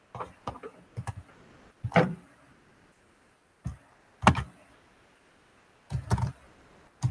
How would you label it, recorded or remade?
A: recorded